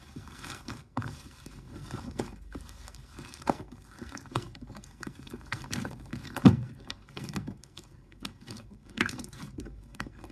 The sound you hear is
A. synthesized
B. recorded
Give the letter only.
A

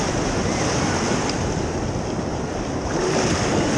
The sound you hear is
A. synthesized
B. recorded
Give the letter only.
B